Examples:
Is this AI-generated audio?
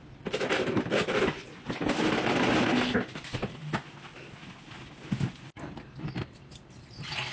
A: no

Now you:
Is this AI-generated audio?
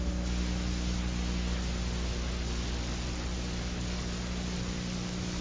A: no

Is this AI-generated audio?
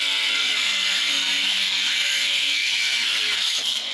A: yes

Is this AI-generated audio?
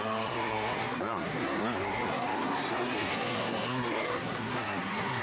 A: yes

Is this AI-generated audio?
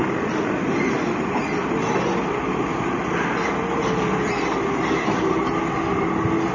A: no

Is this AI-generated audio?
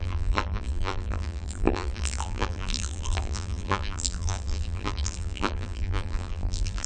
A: yes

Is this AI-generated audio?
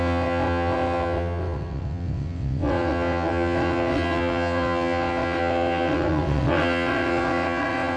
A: yes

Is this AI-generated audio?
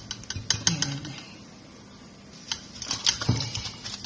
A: no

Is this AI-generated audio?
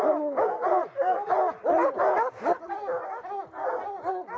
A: no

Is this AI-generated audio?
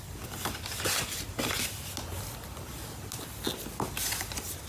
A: no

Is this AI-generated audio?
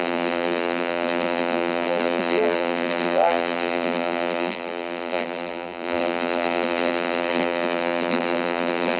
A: yes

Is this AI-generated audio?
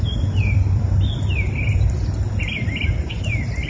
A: no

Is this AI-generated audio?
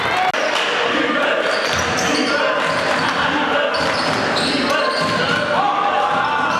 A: no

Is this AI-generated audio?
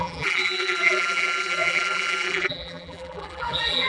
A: yes